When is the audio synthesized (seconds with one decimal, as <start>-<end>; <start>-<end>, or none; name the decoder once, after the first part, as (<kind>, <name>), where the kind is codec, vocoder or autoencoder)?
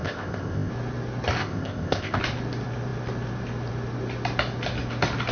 0.0-0.7 (codec, ZipCodec); 1.4-2.2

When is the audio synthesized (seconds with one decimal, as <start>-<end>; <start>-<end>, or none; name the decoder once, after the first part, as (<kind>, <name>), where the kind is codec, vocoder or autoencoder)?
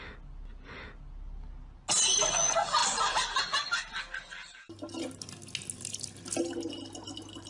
2.8-4.0 (vocoder, BigVGAN v2)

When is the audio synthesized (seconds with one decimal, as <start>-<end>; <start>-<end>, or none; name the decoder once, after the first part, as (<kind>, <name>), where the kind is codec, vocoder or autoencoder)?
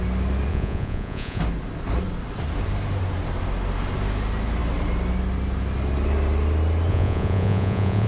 0.5-1.4 (vocoder, Vocos); 6.9-8.1